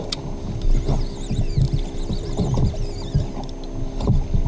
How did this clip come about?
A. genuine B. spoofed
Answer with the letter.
A